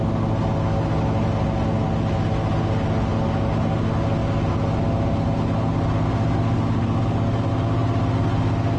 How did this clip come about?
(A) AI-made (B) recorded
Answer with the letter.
B